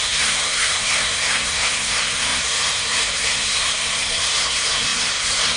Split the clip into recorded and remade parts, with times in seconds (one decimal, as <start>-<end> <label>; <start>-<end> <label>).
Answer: 0.0-5.6 remade